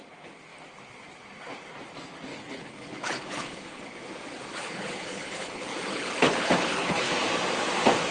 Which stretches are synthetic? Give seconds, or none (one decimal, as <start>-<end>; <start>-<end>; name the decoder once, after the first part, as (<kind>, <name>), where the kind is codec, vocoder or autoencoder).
2.3-3.8 (codec, HILCodec); 4.6-7.1